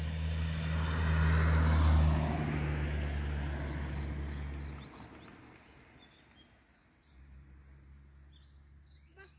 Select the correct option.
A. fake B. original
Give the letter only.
B